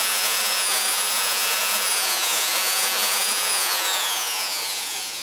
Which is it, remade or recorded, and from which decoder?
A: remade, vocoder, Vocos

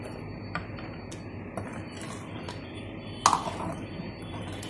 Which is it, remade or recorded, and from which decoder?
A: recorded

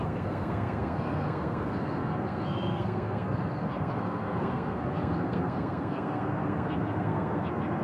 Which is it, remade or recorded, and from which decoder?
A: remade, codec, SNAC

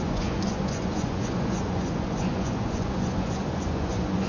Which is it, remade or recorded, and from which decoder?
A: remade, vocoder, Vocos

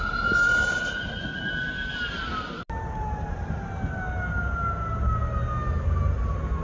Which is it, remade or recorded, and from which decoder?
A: recorded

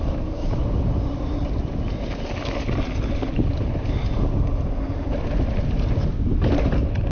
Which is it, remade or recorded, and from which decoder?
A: recorded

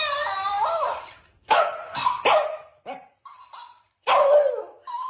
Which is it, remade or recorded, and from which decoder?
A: remade, vocoder, BigVGAN v2